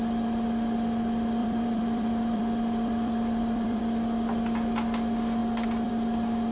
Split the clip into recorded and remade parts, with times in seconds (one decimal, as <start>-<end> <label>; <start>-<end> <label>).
0.0-1.4 recorded; 1.4-3.8 remade; 3.8-5.4 recorded; 5.4-5.9 remade; 5.9-6.5 recorded